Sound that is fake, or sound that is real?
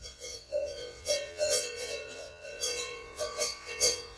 fake